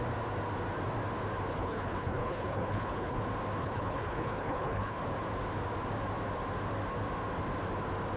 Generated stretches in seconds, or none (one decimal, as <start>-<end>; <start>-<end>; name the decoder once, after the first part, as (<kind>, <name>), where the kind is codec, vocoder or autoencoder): 1.5-3.2 (codec, HILCodec); 3.6-5.0